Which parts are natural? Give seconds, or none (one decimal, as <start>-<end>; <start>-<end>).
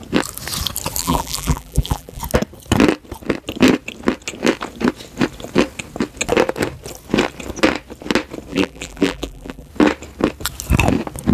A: 0.0-1.0; 2.2-8.5; 9.7-11.3